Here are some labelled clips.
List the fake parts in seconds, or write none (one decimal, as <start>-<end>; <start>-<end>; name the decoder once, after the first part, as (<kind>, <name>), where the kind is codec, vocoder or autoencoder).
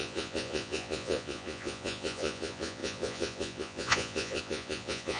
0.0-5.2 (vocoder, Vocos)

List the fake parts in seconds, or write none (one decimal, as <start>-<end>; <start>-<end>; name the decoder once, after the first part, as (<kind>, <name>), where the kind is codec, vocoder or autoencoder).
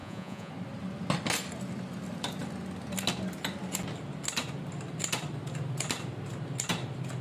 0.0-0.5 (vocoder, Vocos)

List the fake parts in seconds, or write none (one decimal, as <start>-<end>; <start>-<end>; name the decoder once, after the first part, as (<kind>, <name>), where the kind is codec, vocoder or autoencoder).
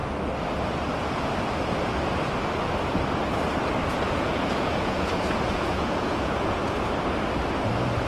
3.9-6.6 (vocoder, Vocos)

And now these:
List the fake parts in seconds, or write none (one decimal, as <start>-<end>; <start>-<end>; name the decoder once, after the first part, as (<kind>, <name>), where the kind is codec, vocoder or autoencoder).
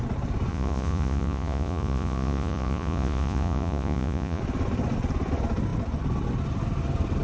0.5-4.4 (vocoder, Vocos)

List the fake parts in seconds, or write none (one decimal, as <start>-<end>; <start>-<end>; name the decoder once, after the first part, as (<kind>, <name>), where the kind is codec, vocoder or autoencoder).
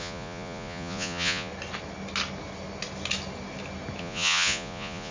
0.0-1.5 (vocoder, Vocos); 4.0-5.1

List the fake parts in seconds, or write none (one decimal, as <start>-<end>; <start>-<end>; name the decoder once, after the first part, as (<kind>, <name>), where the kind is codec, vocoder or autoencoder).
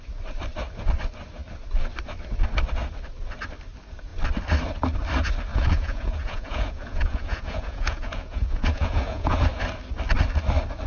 5.5-9.4 (vocoder, Vocos)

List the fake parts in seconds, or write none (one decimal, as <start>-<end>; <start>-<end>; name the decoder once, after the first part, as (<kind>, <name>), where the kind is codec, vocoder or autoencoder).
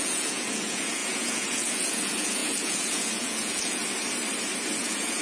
0.0-3.8 (vocoder, Vocos); 4.8-5.2